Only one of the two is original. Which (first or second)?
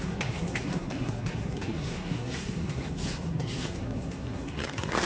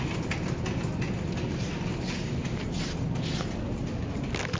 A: second